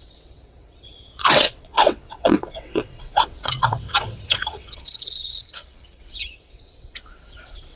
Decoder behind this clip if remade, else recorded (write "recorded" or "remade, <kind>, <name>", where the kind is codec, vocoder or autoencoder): remade, vocoder, WaveNeXt